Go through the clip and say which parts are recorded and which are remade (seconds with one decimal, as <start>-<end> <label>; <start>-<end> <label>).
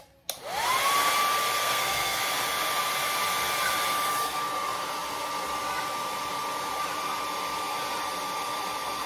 0.0-1.6 recorded; 1.6-2.2 remade; 2.2-9.1 recorded